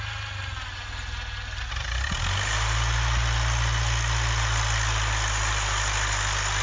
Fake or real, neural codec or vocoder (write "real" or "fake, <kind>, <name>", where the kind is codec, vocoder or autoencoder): real